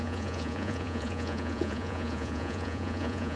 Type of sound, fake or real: fake